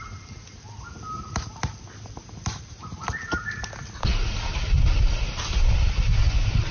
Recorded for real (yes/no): yes